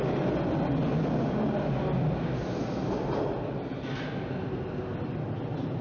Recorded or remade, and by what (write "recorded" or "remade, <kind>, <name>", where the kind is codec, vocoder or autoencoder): recorded